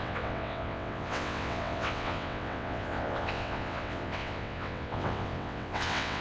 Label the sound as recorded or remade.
remade